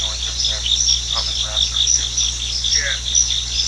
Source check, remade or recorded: recorded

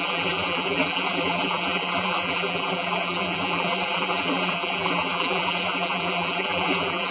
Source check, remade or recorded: remade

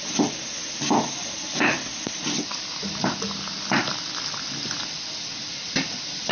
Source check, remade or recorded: recorded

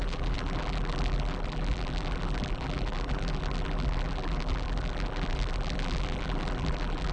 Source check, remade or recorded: remade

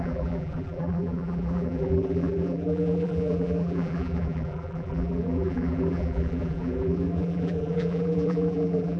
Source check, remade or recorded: remade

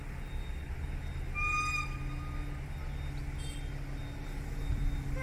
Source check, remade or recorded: recorded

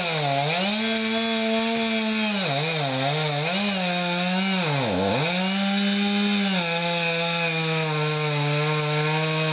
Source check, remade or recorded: recorded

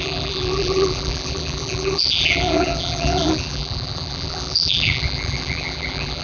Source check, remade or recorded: remade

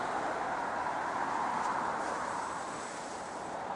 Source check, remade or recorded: remade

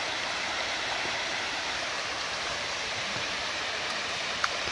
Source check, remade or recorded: remade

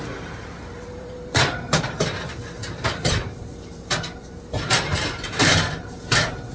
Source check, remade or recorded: remade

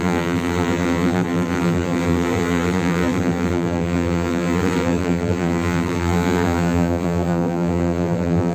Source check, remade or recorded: remade